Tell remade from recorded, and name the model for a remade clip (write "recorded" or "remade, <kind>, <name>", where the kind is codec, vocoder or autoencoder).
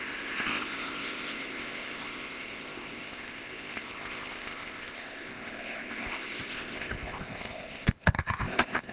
remade, codec, ZipCodec